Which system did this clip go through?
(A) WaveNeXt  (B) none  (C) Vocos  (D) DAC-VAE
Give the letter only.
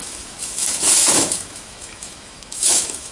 D